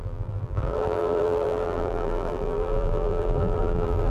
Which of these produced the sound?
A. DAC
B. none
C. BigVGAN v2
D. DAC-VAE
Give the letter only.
C